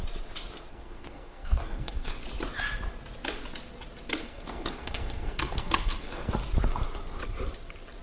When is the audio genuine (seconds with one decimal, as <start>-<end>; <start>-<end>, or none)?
0.0-0.7; 2.2-4.2; 6.3-8.0